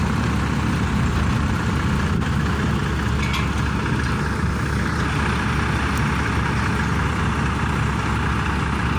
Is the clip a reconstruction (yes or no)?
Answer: no